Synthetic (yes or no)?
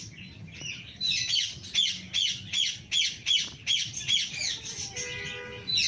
no